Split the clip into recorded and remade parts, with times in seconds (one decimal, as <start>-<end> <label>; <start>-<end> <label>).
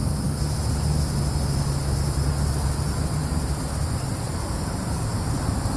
0.0-5.8 recorded